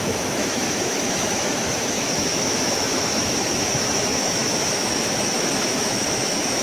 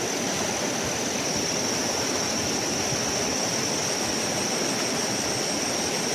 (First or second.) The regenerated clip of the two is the first